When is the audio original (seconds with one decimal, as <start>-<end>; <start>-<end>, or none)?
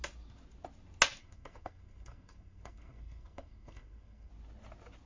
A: 0.0-1.2; 4.3-5.1